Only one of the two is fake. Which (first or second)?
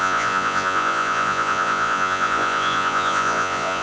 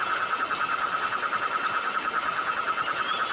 first